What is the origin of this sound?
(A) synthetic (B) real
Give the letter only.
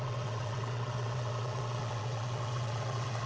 A